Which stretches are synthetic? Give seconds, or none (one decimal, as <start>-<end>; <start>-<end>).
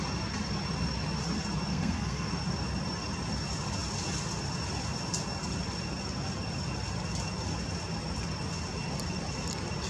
1.7-2.3